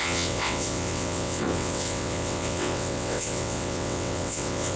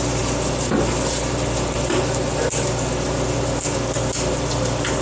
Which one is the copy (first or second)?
first